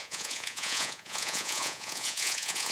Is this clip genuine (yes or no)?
no